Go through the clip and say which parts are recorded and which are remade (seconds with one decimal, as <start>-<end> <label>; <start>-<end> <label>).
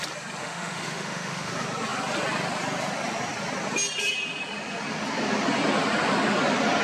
0.0-0.4 recorded; 0.4-1.5 remade; 1.5-6.8 recorded